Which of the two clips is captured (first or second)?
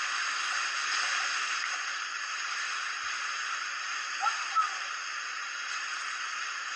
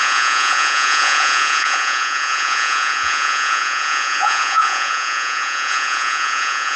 first